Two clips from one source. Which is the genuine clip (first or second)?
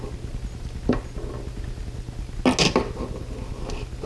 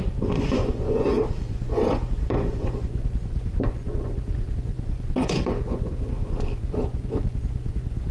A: first